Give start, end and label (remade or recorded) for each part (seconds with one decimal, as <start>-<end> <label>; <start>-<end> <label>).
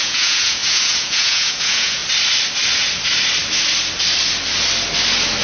0.0-2.0 remade; 2.0-5.4 recorded